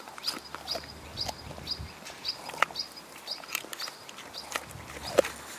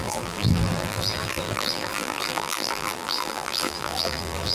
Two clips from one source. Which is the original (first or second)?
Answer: first